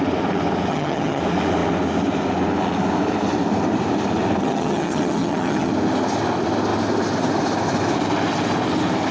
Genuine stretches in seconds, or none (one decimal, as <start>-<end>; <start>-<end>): 0.0-0.7; 1.2-4.4; 5.7-9.1